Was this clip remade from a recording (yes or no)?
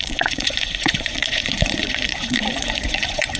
yes